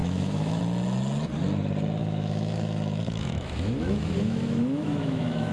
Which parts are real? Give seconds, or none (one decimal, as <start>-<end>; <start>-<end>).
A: 0.6-2.0